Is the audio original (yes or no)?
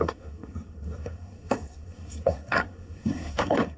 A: no